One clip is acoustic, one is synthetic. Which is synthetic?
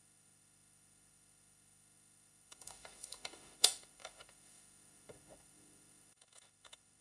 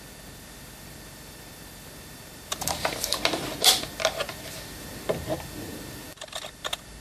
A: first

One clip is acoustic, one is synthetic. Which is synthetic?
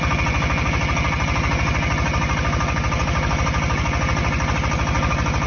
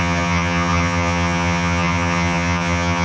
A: second